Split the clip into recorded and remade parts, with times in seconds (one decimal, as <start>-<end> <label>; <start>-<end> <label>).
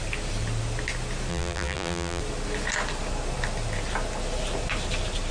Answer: 0.0-1.3 recorded; 1.3-2.2 remade; 2.2-5.3 recorded